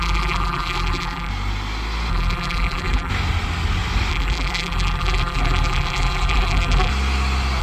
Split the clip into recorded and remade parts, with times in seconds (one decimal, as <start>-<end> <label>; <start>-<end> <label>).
0.0-1.3 remade; 1.3-2.1 recorded; 2.1-3.1 remade; 3.1-4.1 recorded; 4.1-6.9 remade; 6.9-7.6 recorded